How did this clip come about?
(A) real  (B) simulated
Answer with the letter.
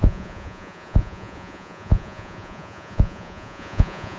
B